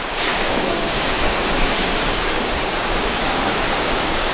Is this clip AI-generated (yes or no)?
yes